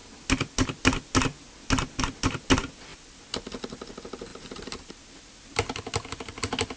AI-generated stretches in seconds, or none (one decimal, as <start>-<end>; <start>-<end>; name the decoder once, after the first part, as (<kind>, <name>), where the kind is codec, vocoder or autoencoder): 4.3-4.9 (vocoder, BigVGAN v2)